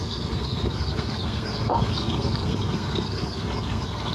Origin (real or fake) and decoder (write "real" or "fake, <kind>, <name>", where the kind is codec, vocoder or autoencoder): fake, codec, SNAC